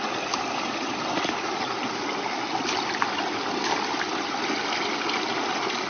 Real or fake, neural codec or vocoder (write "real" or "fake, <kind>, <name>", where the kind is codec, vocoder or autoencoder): real